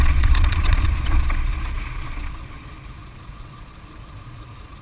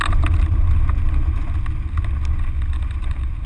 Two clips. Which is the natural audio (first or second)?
second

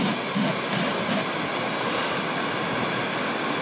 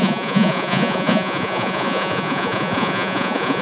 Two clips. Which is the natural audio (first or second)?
first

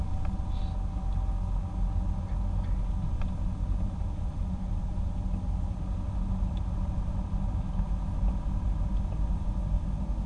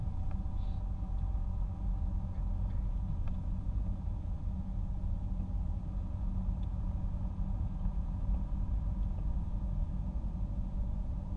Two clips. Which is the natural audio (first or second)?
first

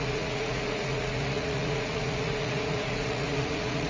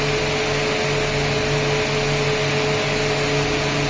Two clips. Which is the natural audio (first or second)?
second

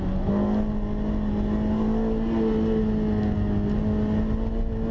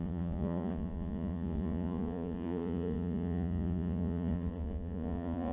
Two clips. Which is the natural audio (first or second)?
first